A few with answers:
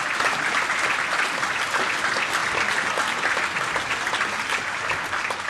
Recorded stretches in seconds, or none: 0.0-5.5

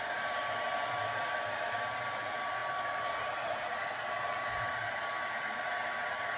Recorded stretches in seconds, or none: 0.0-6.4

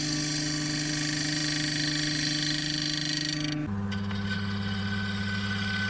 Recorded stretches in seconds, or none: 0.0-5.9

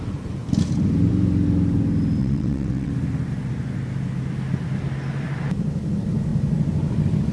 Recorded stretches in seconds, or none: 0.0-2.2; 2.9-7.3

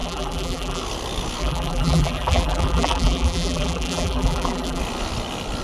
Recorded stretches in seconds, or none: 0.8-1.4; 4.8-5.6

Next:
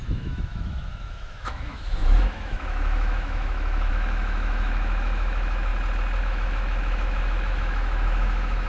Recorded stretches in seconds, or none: 5.7-6.2

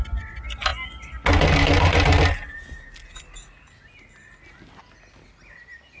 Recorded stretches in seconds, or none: 0.0-6.0

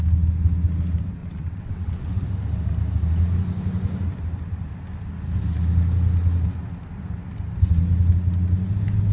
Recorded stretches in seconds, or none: 0.0-1.2; 2.1-9.1